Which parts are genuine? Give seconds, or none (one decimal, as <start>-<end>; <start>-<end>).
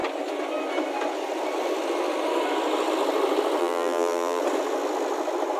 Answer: 0.0-3.6; 4.4-5.6